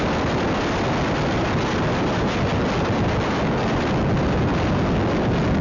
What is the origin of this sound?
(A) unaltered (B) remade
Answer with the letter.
A